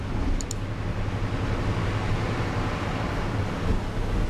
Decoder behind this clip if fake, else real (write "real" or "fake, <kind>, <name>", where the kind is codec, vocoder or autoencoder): real